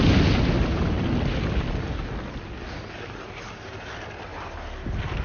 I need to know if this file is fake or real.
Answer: real